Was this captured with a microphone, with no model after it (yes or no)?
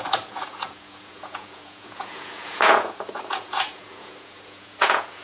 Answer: no